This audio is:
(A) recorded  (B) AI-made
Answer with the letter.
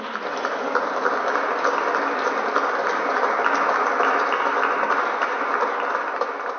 A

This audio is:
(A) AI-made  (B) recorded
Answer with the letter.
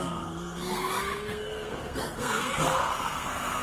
A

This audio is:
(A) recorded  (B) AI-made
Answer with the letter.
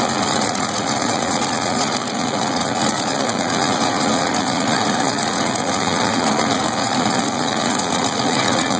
B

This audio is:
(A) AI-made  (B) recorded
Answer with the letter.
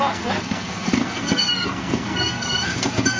A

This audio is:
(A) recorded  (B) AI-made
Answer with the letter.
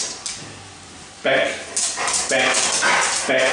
A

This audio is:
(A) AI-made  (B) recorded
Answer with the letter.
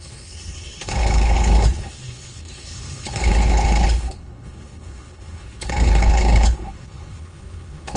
A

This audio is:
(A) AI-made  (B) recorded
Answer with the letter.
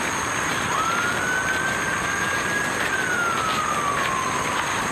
B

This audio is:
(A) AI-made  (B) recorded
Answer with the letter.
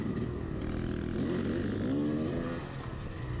B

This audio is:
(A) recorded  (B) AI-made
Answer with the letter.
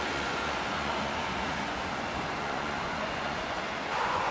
B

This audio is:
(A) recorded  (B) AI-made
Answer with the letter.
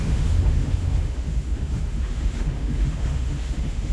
B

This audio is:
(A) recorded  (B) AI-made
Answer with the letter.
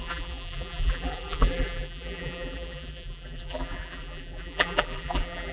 B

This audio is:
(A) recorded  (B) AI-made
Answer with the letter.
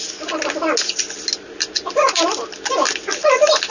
A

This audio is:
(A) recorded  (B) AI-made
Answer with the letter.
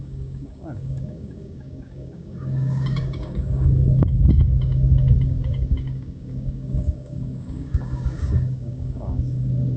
B